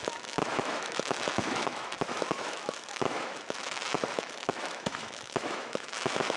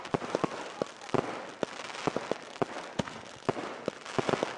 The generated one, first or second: first